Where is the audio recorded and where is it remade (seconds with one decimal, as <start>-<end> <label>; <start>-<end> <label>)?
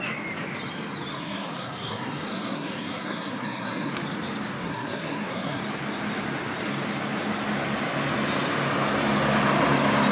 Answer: 0.0-1.1 recorded; 1.1-3.9 remade; 3.9-4.6 recorded; 4.6-5.6 remade; 5.6-10.1 recorded